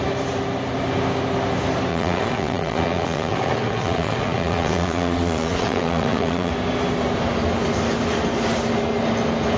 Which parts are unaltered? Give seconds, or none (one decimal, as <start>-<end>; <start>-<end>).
0.0-1.9; 6.5-9.6